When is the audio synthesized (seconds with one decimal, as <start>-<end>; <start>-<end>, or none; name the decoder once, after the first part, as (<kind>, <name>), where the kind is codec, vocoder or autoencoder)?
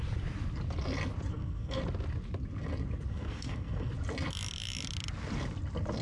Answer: 1.3-1.8 (codec, SNAC); 3.1-3.9